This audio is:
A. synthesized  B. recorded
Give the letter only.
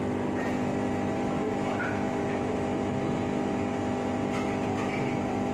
B